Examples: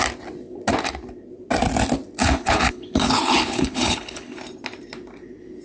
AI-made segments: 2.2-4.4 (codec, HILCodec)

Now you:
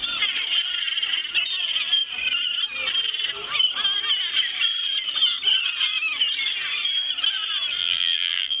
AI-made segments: 7.8-8.6 (vocoder, BigVGAN v2)

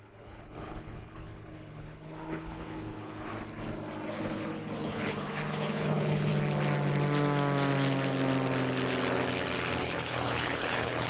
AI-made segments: 0.0-3.3 (codec, HILCodec); 4.1-6.3; 9.8-11.1

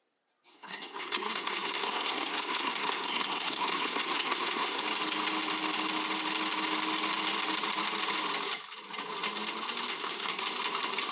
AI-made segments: 0.5-4.8 (codec, SNAC); 9.9-10.4

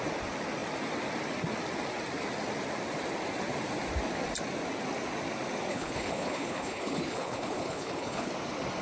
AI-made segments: 5.7-8.3 (codec, HILCodec)

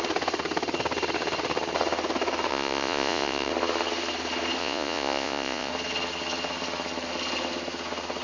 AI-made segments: 2.5-3.5 (vocoder, Vocos); 4.6-5.7

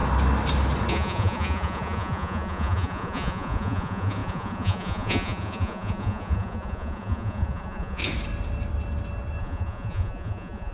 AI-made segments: 0.9-8.0 (vocoder, Vocos); 9.4-10.7